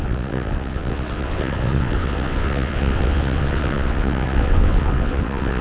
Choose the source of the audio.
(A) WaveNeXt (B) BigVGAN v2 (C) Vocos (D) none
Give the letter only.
A